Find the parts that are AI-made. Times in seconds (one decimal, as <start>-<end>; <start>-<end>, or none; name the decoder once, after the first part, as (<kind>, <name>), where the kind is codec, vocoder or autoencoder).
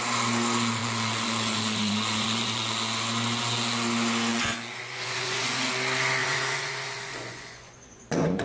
0.8-2.7 (vocoder, Vocos); 4.3-5.7; 6.2-8.4